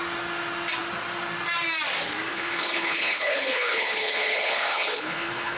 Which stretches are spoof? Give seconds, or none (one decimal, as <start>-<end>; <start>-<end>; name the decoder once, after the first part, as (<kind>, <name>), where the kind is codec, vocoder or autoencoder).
2.3-5.6 (codec, HILCodec)